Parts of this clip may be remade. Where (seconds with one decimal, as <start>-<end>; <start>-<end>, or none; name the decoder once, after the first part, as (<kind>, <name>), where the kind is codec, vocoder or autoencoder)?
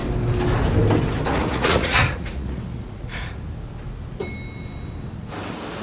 1.3-3.4 (vocoder, Vocos)